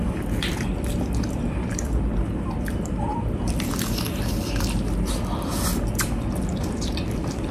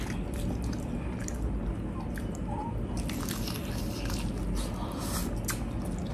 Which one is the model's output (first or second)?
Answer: first